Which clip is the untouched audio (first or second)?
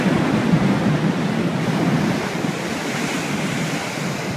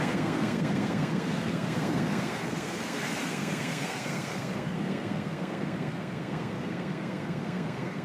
first